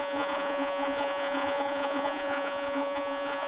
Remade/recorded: remade